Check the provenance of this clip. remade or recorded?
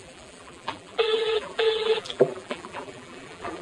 remade